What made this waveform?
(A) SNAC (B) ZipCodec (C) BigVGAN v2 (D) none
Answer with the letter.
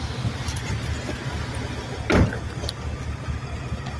D